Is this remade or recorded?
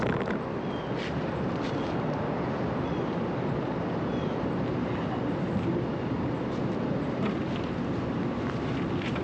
recorded